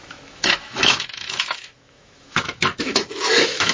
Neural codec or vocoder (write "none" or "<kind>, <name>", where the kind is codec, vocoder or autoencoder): autoencoder, DAC-VAE